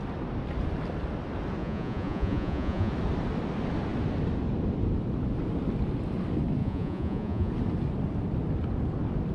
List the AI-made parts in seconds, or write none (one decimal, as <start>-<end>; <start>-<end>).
1.6-2.9; 6.6-7.5